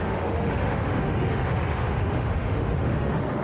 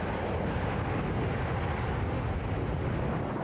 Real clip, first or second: second